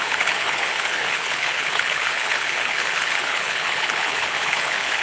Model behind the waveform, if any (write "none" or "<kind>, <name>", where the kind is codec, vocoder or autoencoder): codec, HILCodec